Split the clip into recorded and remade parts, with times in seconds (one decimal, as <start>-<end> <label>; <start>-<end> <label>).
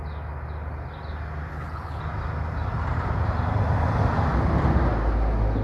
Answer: 0.0-1.5 recorded; 1.5-2.0 remade; 2.0-5.6 recorded